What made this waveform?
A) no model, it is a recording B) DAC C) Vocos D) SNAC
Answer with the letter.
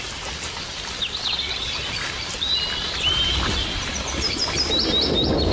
A